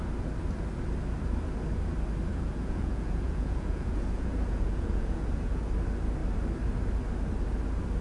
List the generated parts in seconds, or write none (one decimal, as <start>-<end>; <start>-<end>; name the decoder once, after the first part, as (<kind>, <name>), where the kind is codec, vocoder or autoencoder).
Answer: 2.3-5.7 (vocoder, Vocos)